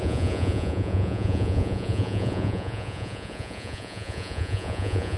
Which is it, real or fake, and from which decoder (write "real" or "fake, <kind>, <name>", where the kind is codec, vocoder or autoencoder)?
fake, vocoder, Vocos